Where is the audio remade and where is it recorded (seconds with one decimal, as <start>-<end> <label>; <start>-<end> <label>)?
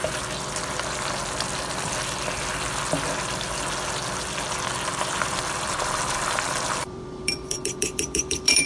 0.0-4.9 recorded; 4.9-8.7 remade